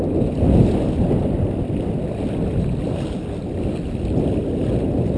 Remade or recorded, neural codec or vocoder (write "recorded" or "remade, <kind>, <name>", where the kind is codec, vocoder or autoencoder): recorded